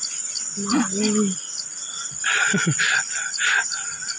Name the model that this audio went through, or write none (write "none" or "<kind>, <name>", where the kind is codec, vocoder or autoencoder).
none